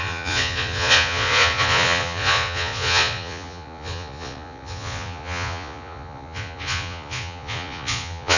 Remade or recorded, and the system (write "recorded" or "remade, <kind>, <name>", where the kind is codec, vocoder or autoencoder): remade, vocoder, Vocos